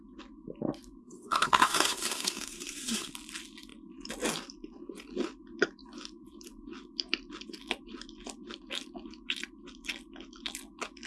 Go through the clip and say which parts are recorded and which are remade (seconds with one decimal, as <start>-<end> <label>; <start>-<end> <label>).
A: 0.0-1.0 recorded; 1.0-3.1 remade; 3.1-11.1 recorded